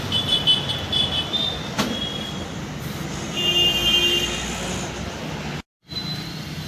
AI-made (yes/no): no